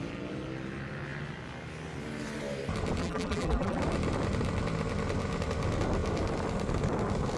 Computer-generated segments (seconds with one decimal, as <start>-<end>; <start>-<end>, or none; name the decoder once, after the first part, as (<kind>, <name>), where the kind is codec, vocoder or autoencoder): 3.0-3.8 (vocoder, BigVGAN v2)